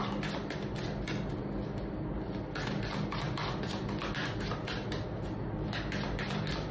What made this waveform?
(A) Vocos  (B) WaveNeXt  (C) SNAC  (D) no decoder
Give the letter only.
D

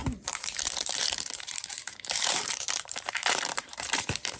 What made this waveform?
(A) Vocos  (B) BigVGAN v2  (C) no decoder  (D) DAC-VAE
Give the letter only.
B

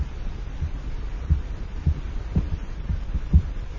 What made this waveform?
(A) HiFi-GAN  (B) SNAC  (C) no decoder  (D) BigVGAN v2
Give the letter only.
D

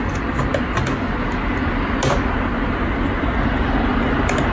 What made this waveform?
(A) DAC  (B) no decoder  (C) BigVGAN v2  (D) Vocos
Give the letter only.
B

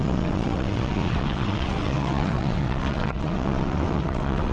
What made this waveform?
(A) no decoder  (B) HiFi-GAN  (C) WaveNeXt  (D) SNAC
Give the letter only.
C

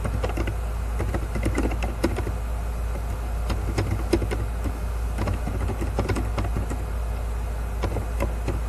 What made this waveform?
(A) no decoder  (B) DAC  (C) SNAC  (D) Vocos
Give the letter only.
A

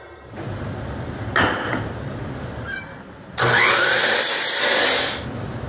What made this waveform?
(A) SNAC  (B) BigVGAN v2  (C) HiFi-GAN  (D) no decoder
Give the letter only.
B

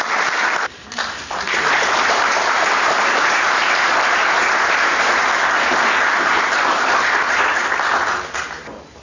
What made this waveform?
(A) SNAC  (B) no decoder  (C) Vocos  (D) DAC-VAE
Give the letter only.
B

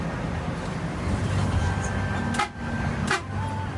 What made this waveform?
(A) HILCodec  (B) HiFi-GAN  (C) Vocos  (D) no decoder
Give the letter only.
D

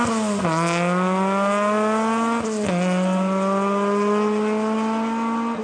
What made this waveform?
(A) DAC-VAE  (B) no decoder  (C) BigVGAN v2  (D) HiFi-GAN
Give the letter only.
B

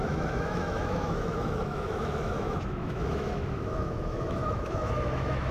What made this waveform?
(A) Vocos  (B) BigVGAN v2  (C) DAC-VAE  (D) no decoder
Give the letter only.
C